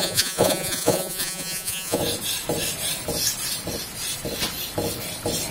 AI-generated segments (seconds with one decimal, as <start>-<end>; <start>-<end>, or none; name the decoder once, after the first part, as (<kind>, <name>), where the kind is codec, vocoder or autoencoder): 0.0-2.0 (vocoder, Vocos)